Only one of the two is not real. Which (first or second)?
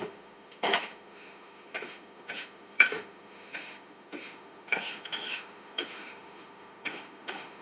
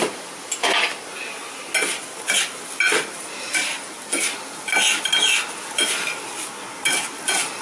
first